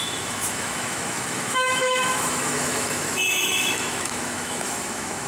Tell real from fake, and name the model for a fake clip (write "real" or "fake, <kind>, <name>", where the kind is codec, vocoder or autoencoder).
fake, autoencoder, DAC-VAE